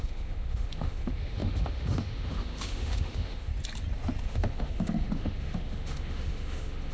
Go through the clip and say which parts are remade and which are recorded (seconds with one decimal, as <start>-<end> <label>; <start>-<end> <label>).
0.0-3.5 remade; 3.5-4.2 recorded; 4.2-6.9 remade